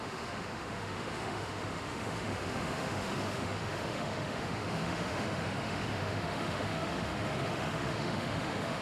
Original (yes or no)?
no